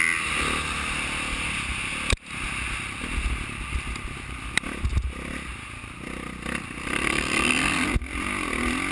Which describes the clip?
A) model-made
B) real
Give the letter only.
B